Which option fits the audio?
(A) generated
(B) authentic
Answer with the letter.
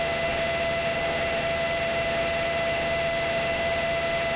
A